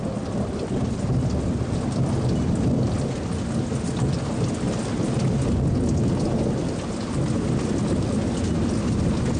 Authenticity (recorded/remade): recorded